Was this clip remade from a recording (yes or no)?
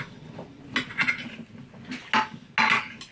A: no